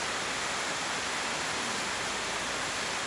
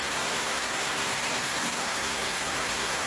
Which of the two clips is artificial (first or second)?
second